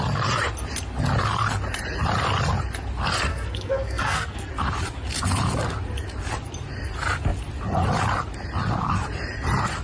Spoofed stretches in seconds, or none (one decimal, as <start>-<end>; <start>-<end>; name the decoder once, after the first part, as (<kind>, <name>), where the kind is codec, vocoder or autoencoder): 3.3-4.5 (codec, SNAC)